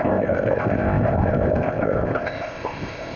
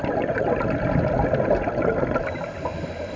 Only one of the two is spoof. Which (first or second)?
first